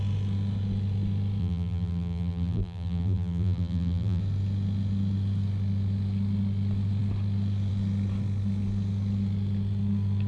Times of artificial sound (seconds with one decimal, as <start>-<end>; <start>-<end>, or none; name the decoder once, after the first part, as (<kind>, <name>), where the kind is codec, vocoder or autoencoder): 1.4-4.2 (vocoder, BigVGAN v2)